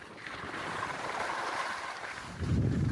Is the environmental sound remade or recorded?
remade